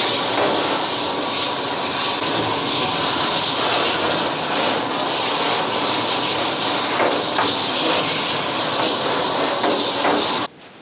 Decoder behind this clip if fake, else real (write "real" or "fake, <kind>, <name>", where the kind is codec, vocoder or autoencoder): real